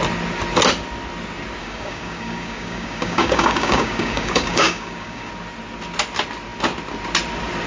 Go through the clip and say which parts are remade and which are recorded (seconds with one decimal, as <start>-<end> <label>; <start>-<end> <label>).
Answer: 0.0-1.6 recorded; 1.6-5.3 remade; 5.3-7.7 recorded